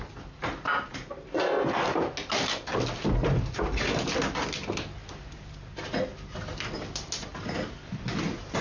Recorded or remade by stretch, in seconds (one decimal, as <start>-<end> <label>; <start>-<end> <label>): 0.0-8.6 recorded